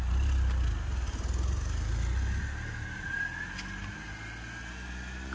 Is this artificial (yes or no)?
no